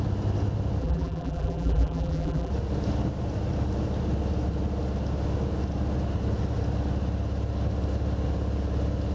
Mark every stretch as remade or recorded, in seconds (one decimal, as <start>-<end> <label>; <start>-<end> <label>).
0.0-0.8 recorded; 0.8-2.5 remade; 2.5-9.1 recorded